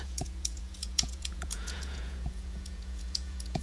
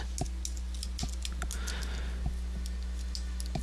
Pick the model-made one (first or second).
first